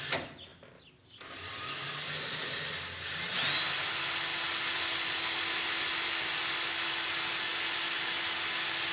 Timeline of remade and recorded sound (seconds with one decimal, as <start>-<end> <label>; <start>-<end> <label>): 0.0-8.9 recorded

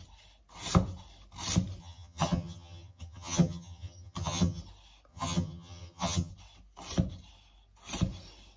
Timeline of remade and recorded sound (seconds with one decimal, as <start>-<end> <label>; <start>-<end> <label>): 0.0-1.8 recorded; 1.8-4.6 remade; 4.6-5.1 recorded; 5.1-6.3 remade; 6.3-8.6 recorded